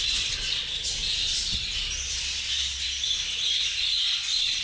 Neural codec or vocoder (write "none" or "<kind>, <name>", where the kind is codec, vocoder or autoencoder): vocoder, BigVGAN v2